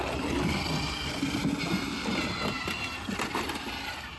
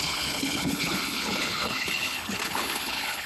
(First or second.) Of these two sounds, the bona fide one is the first